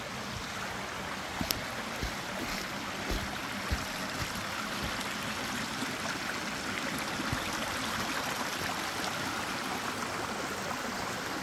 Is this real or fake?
real